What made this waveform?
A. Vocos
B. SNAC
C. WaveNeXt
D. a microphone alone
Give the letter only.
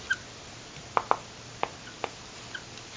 D